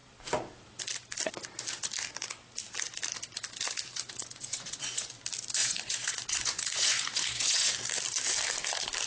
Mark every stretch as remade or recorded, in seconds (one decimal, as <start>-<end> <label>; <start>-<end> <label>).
0.0-4.2 recorded; 4.2-5.1 remade; 5.1-5.6 recorded; 5.6-7.7 remade; 7.7-9.1 recorded